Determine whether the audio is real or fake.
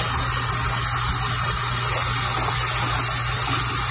real